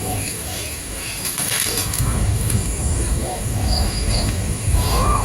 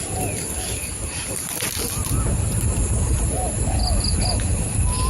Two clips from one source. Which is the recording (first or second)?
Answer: second